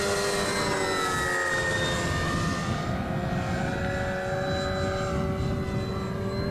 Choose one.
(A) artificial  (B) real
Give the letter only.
B